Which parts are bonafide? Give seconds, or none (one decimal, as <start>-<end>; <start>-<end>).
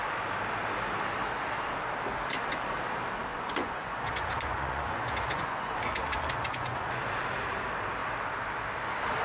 0.0-3.3; 7.0-9.2